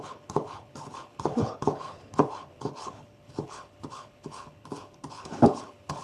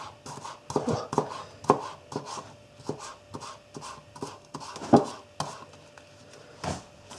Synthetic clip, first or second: first